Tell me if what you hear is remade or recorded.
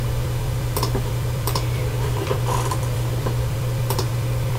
remade